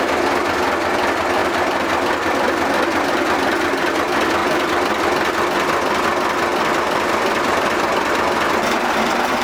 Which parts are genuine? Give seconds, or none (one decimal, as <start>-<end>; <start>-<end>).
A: 0.0-1.4; 2.1-4.4; 5.0-6.5; 8.5-9.4